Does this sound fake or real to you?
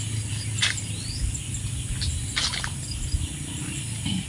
real